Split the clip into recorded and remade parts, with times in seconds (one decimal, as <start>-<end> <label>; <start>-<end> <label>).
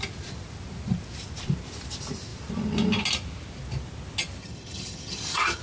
0.0-4.4 recorded; 4.4-5.6 remade